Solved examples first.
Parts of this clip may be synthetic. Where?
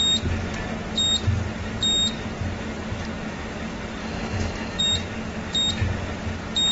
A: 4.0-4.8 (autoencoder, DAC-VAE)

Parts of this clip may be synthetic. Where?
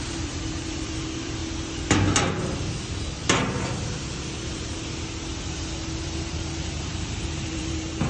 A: 0.0-1.4 (vocoder, BigVGAN v2); 6.0-8.1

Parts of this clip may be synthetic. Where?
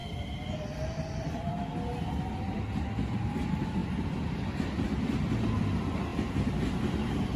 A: 0.0-1.5 (vocoder, BigVGAN v2); 3.8-5.0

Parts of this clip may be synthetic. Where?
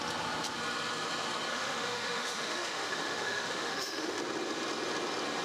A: 1.5-4.2 (autoencoder, DAC-VAE)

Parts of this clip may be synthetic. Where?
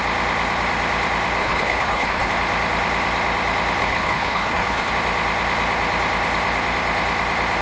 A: 1.4-2.3 (codec, HILCodec); 3.8-4.9